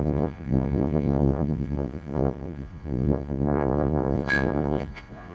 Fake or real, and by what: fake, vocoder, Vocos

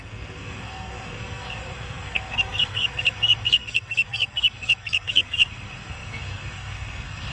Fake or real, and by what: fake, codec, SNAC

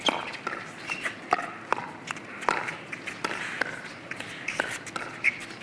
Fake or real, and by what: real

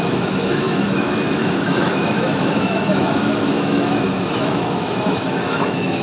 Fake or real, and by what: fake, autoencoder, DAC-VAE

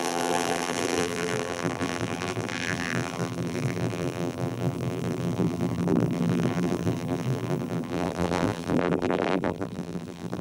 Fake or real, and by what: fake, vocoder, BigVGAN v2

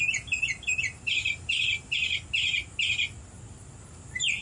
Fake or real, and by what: real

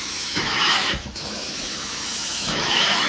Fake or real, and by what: fake, autoencoder, DAC-VAE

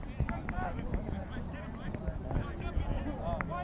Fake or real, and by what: real